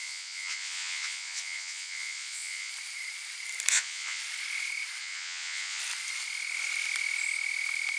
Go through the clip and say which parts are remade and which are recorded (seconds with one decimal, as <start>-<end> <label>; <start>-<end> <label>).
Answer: 0.0-2.7 remade; 2.7-3.7 recorded; 3.7-4.2 remade; 4.2-5.0 recorded; 5.0-5.8 remade; 5.8-8.0 recorded